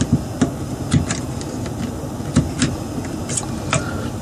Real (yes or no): yes